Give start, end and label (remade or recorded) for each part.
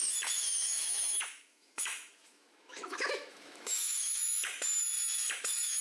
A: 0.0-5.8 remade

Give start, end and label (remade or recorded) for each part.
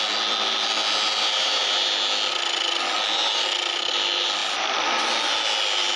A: 0.0-6.0 recorded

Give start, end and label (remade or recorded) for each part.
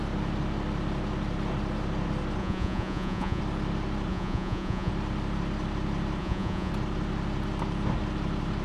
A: 0.0-2.4 recorded; 2.4-3.4 remade; 3.4-4.1 recorded; 4.1-4.9 remade; 4.9-6.2 recorded; 6.2-6.7 remade; 6.7-8.6 recorded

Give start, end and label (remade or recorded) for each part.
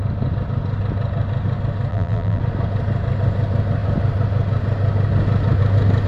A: 0.0-1.9 recorded; 1.9-2.4 remade; 2.4-6.1 recorded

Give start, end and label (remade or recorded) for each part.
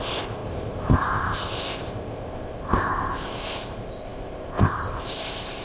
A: 0.0-5.6 remade